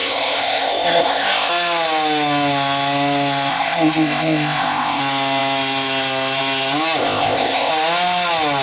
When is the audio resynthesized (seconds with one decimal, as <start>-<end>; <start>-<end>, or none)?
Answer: 0.0-1.5; 3.5-5.0; 7.0-7.7